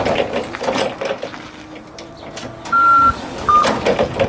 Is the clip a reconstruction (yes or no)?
no